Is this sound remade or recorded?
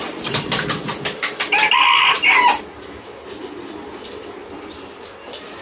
recorded